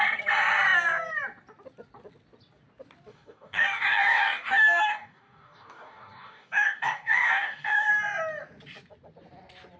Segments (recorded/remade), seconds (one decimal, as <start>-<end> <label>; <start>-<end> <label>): 0.0-3.1 recorded; 3.1-7.9 remade; 7.9-9.8 recorded